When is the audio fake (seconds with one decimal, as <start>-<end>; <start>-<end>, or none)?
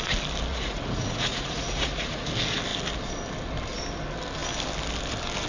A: 0.5-2.3